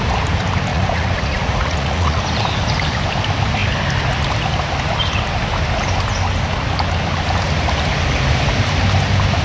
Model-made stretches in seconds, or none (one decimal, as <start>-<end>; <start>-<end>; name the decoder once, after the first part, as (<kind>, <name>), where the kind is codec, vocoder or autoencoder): 0.7-2.2 (vocoder, Vocos)